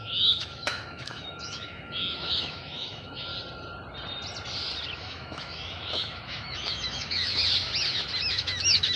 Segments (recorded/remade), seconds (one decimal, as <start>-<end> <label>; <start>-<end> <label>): 0.0-3.3 remade; 3.3-5.0 recorded; 5.0-7.4 remade; 7.4-8.2 recorded; 8.2-9.0 remade